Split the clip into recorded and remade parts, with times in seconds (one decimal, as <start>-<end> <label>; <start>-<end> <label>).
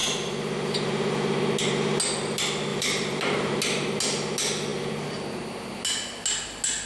0.0-2.7 recorded; 2.7-3.5 remade; 3.5-6.9 recorded